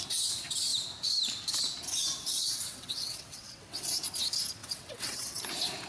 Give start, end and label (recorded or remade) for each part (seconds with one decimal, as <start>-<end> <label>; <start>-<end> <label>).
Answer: 0.0-2.2 recorded; 2.2-3.9 remade; 3.9-4.6 recorded; 4.6-5.4 remade; 5.4-5.9 recorded